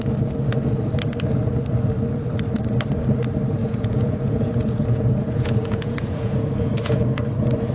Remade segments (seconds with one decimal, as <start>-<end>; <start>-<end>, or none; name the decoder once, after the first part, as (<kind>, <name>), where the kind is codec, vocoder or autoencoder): 3.6-7.0 (vocoder, Vocos)